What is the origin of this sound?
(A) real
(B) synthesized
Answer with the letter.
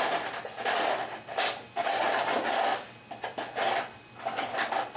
A